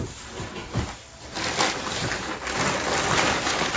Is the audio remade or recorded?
recorded